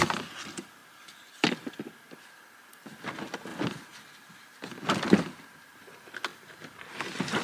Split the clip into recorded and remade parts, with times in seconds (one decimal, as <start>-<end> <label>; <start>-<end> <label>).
0.0-0.8 recorded; 0.8-2.1 remade; 2.1-3.5 recorded; 3.5-4.7 remade; 4.7-6.3 recorded; 6.3-6.9 remade; 6.9-7.4 recorded